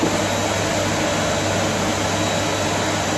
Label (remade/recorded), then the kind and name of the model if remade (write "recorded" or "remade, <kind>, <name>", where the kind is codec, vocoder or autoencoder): recorded